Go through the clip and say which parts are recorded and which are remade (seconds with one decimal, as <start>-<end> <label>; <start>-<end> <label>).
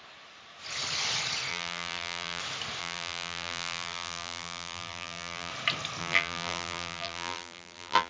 0.0-1.5 recorded; 1.5-2.4 remade; 2.4-2.8 recorded; 2.8-5.5 remade; 5.5-6.0 recorded; 6.0-8.1 remade